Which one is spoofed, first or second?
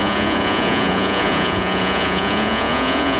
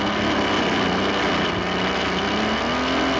first